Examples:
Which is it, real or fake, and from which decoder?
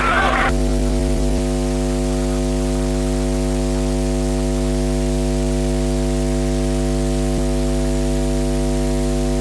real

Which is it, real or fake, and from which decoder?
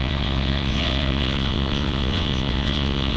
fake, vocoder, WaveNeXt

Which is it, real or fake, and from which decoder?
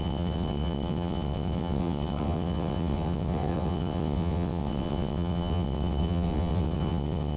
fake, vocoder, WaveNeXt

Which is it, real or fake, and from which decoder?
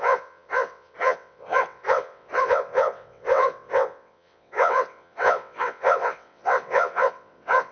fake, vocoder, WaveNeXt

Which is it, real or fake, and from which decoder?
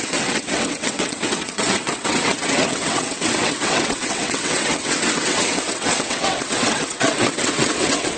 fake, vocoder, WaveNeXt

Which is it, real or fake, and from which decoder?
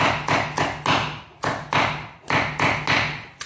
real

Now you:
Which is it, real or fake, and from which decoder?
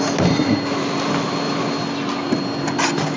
real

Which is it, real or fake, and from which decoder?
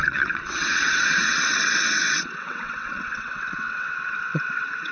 fake, vocoder, WaveNeXt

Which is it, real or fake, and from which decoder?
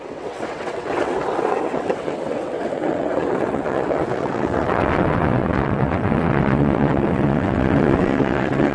fake, vocoder, WaveNeXt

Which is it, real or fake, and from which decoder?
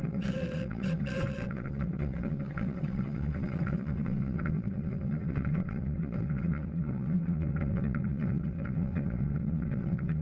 fake, vocoder, WaveNeXt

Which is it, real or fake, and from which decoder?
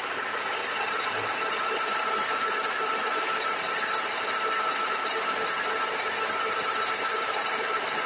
real